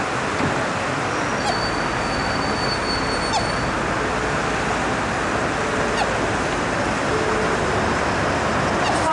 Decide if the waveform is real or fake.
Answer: real